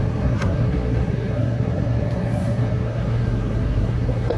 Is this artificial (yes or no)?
yes